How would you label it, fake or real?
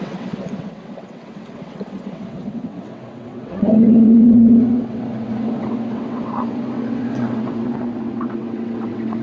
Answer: fake